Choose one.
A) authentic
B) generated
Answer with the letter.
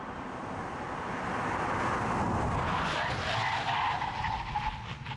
A